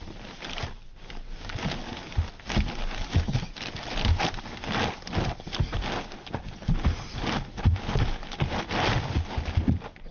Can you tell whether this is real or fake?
real